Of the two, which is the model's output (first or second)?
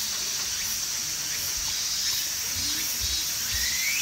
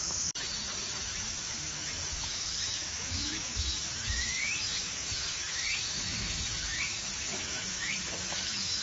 second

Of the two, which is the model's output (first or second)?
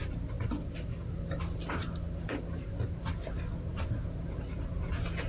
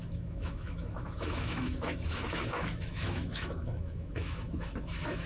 second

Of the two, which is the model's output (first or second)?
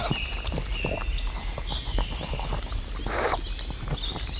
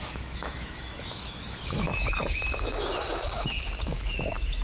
second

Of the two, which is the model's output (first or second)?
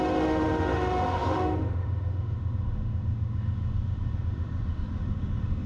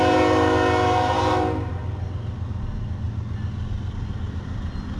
first